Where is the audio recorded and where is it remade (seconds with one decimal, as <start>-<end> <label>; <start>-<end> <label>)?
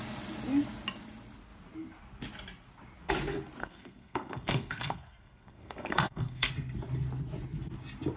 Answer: 0.0-3.6 recorded; 3.6-6.5 remade; 6.5-8.2 recorded